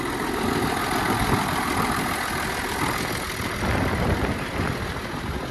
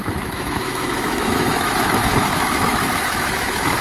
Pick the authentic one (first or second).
first